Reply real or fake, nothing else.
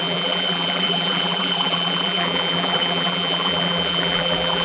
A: fake